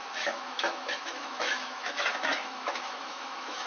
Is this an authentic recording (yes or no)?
no